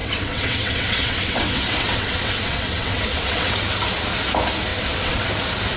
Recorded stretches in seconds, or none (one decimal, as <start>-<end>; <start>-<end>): 3.5-4.7; 5.3-5.8